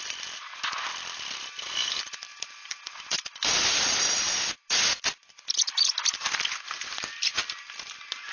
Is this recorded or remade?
recorded